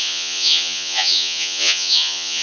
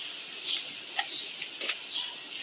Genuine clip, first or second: second